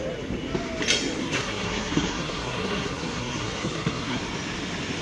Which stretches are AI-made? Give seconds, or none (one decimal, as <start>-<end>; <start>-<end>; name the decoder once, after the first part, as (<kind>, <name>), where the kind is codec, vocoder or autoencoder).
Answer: 1.2-4.2 (codec, SNAC)